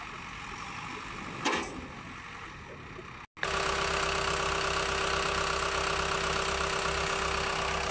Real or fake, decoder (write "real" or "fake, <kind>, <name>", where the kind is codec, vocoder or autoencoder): real